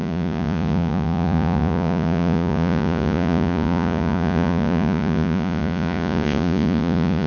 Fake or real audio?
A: fake